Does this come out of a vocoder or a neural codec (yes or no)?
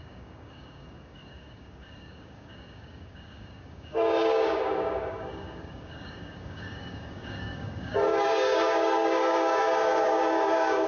yes